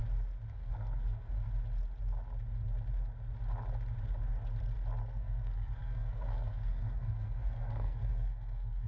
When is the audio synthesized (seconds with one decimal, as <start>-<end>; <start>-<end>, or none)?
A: 0.5-1.5; 5.1-8.9